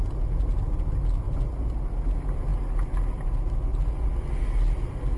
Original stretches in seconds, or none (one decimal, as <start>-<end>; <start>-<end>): 0.0-5.2